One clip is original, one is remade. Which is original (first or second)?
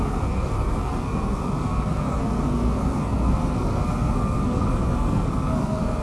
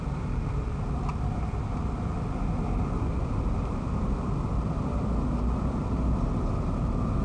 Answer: second